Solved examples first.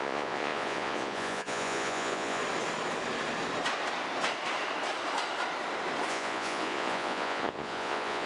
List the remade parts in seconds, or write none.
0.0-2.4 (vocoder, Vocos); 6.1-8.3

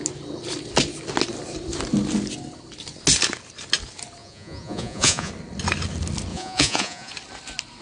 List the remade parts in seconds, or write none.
4.2-5.3 (vocoder, Vocos); 6.3-7.1